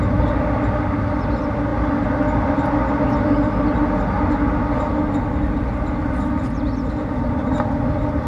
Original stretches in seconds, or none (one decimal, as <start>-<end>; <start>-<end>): 0.0-8.3